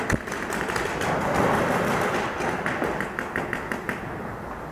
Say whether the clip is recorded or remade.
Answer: recorded